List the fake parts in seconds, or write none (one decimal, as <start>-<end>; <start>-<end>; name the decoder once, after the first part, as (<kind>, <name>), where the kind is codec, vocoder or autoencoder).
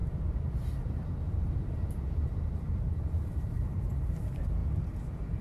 0.0-4.6 (vocoder, BigVGAN v2)